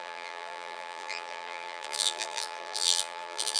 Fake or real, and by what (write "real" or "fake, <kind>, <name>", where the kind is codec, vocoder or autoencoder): fake, vocoder, BigVGAN v2